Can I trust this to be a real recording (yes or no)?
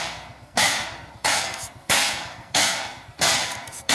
no